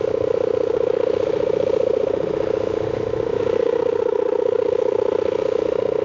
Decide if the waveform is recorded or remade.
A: remade